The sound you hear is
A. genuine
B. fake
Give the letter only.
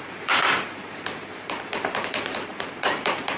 B